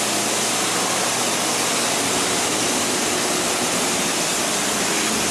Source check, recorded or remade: recorded